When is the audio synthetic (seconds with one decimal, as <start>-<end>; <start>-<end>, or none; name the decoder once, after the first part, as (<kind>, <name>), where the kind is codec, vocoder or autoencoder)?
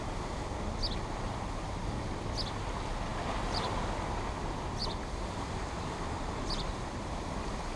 3.1-3.9 (vocoder, BigVGAN v2); 4.8-7.8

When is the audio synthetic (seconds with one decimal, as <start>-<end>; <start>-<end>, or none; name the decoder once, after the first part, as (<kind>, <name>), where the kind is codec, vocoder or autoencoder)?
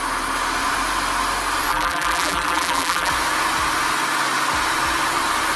1.7-3.1 (vocoder, BigVGAN v2)